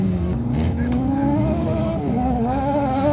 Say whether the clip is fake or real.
fake